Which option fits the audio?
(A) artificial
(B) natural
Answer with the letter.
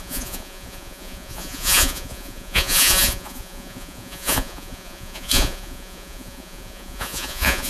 A